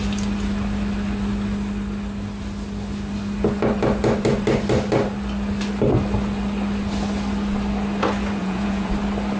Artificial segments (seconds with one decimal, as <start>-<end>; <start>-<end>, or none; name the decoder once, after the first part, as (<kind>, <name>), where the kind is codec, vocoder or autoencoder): 8.4-8.9 (vocoder, Vocos)